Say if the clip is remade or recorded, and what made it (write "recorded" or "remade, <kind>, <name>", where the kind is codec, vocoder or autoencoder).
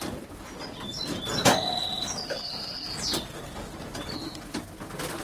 recorded